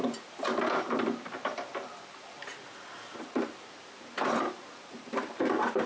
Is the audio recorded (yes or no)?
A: no